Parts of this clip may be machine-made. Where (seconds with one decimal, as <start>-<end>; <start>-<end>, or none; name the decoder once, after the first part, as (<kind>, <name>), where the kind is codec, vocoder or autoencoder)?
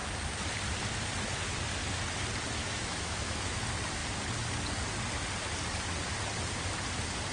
2.6-3.6 (autoencoder, DAC-VAE)